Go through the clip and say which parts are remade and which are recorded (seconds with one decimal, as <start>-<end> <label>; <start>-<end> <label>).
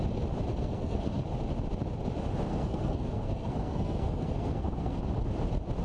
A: 0.0-0.5 recorded; 0.5-1.2 remade; 1.2-2.5 recorded; 2.5-5.0 remade; 5.0-5.8 recorded